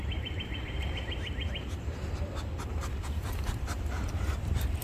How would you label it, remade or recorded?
recorded